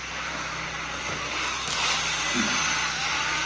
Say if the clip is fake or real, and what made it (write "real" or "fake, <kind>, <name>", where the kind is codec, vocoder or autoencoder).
real